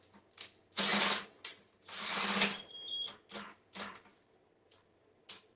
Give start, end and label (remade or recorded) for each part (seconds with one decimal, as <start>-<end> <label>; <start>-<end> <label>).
0.0-5.6 recorded